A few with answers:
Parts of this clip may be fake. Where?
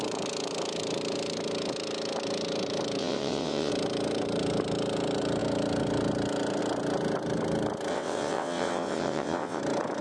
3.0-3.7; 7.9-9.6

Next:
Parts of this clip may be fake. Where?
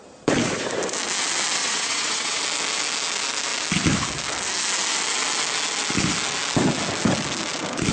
1.6-2.4